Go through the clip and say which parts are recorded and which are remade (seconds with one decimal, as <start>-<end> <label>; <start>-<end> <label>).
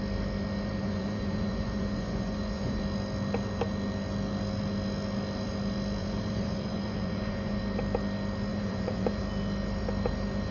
0.0-0.8 recorded; 0.8-2.8 remade; 2.8-6.0 recorded; 6.0-7.6 remade; 7.6-8.5 recorded; 8.5-9.2 remade; 9.2-10.5 recorded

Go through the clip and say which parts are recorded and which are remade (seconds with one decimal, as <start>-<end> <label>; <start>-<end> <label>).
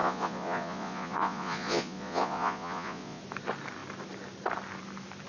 0.0-3.2 remade; 3.2-5.3 recorded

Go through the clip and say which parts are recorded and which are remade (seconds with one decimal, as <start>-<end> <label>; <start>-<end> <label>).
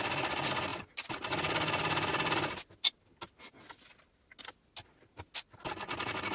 0.0-6.3 recorded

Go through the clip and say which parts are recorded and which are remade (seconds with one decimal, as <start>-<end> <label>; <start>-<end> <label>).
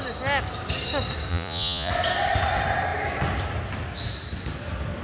0.0-1.3 recorded; 1.3-1.9 remade; 1.9-5.0 recorded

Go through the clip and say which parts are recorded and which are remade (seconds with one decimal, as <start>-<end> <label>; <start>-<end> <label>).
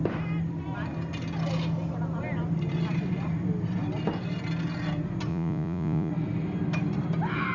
0.0-5.3 recorded; 5.3-6.1 remade; 6.1-7.5 recorded